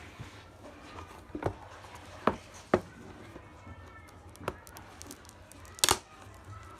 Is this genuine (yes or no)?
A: yes